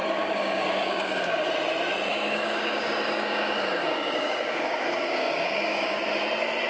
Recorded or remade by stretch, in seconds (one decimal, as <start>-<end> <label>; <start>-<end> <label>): 0.0-1.5 remade; 1.5-2.1 recorded; 2.1-6.0 remade; 6.0-6.7 recorded